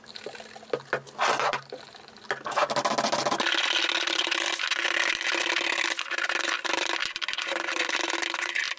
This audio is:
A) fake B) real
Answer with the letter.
B